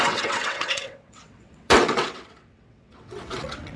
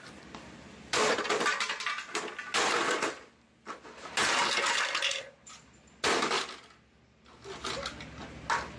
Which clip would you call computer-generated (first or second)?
first